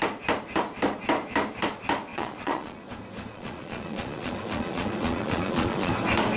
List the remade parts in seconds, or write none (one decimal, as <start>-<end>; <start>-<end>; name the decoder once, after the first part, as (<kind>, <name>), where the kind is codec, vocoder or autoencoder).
2.1-2.9 (vocoder, Vocos); 3.3-5.9